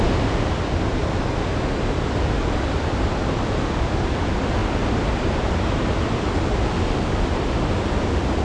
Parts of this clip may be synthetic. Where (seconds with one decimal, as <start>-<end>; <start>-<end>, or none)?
none